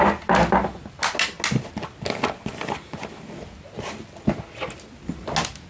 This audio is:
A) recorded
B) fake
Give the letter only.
A